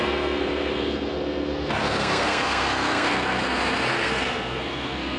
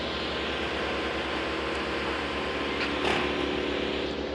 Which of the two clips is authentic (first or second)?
second